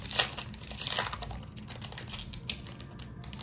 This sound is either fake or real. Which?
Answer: real